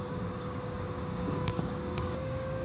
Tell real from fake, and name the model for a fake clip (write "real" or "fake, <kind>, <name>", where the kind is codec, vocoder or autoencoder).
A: fake, codec, DAC